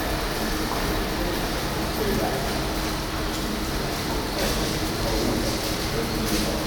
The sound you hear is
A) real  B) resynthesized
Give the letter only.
A